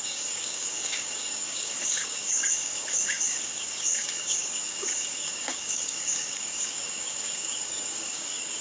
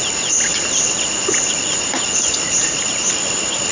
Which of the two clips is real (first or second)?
second